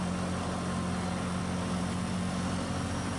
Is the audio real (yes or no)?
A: yes